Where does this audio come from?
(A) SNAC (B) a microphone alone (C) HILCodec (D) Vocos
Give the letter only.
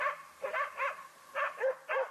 B